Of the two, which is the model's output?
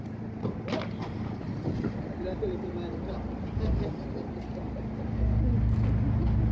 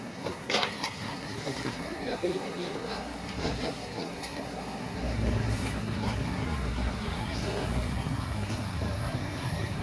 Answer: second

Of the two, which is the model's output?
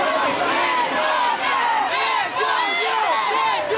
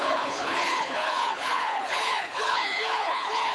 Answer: second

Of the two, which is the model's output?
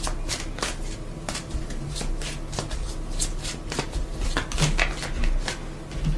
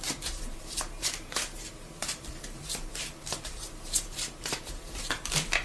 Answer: second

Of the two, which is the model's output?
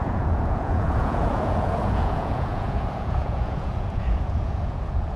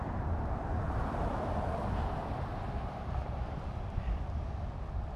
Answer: first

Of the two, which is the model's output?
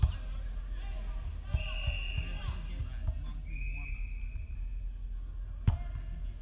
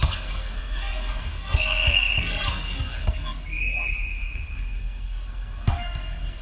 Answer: second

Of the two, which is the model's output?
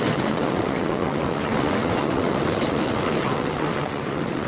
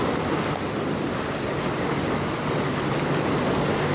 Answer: first